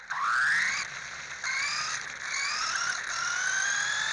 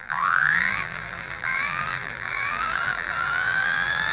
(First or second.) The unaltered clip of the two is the first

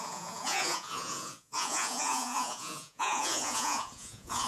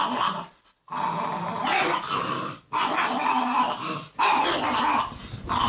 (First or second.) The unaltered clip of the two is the second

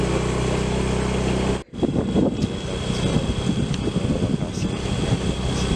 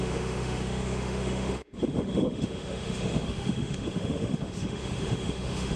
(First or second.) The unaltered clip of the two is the first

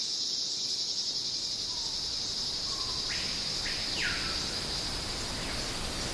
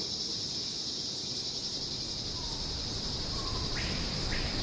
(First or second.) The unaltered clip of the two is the first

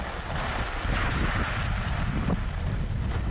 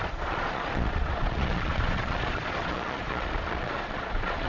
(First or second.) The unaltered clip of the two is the first